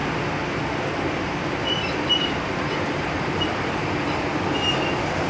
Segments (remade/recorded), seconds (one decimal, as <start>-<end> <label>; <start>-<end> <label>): 0.0-3.2 remade; 3.2-5.3 recorded

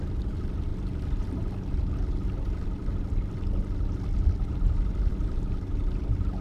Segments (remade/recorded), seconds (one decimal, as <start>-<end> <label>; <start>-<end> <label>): 0.0-6.4 recorded

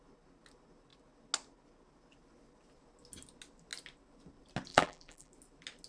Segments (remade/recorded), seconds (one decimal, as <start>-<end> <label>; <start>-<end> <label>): 0.0-4.7 recorded; 4.7-5.3 remade; 5.3-5.9 recorded